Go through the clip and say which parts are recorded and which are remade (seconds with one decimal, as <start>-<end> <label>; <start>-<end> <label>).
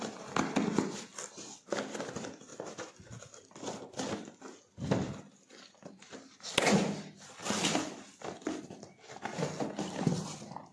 0.0-10.7 recorded